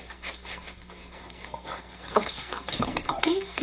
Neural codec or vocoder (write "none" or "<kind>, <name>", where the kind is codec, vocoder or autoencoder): codec, SNAC